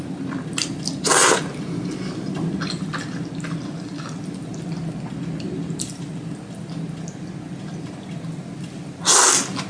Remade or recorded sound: recorded